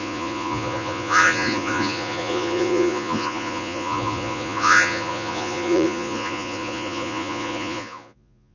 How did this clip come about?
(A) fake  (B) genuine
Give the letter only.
A